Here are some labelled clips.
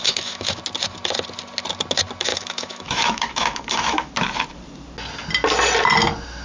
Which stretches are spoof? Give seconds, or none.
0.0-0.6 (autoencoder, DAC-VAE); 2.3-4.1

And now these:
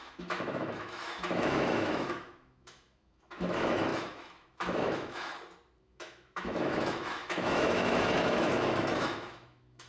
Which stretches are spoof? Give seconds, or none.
0.0-5.3 (autoencoder, DAC-VAE); 5.8-9.9

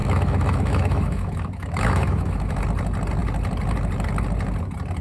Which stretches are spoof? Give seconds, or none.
0.0-2.6 (autoencoder, DAC-VAE)